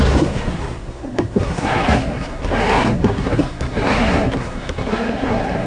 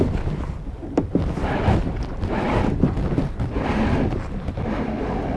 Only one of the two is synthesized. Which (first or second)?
first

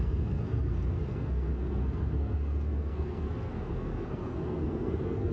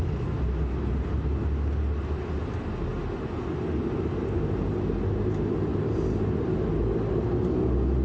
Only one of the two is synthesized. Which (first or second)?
first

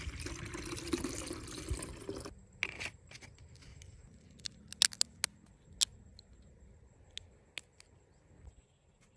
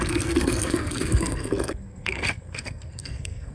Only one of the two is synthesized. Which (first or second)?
second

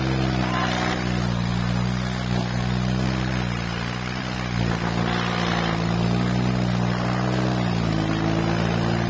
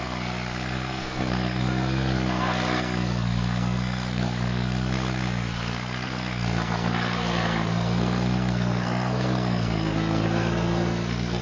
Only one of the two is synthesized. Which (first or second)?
second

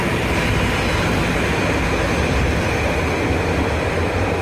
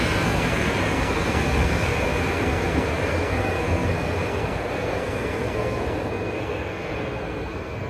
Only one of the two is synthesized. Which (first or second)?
second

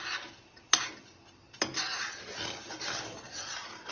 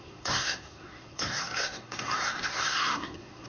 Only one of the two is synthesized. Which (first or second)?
second